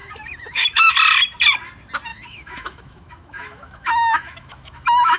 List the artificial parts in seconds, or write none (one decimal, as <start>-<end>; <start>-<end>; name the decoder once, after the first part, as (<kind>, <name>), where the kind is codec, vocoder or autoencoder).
0.0-0.9 (autoencoder, DAC-VAE); 2.1-5.2